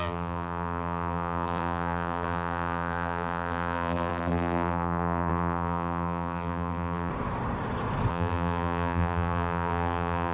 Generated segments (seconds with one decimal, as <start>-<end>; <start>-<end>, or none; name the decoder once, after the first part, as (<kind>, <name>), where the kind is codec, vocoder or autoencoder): 0.0-7.1 (vocoder, BigVGAN v2); 8.1-10.3